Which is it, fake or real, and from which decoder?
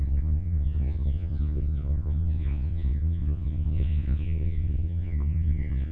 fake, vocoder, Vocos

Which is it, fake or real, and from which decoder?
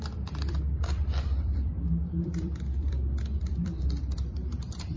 fake, vocoder, BigVGAN v2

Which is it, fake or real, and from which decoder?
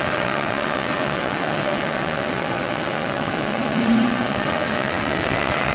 fake, vocoder, WaveNeXt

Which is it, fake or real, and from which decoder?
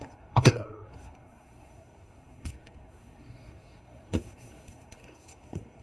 fake, codec, SNAC